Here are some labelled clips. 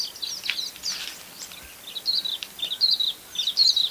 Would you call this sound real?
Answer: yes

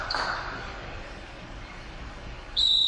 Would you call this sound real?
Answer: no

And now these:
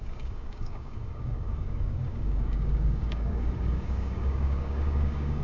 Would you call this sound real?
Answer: no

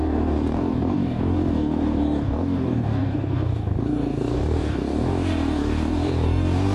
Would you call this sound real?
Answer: no